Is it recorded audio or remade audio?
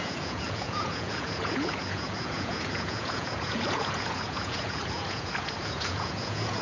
remade